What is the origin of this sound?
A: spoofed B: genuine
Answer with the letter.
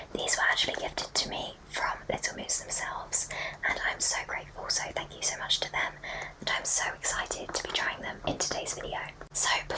B